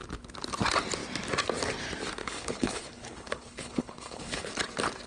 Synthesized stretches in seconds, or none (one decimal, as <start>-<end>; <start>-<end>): 2.2-4.5